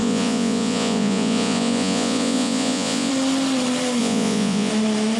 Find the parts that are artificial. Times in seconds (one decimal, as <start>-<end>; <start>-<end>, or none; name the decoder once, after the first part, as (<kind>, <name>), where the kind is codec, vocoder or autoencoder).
0.0-3.1 (vocoder, Vocos); 4.0-4.7